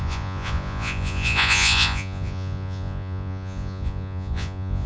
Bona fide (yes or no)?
no